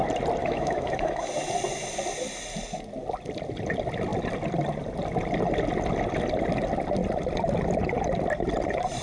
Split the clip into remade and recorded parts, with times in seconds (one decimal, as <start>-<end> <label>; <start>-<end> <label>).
0.0-0.4 recorded; 0.4-1.3 remade; 1.3-9.0 recorded